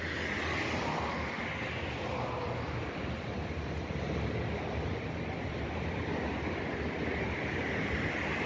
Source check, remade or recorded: recorded